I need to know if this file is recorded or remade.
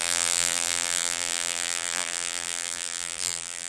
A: remade